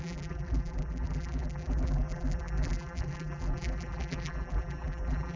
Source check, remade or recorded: remade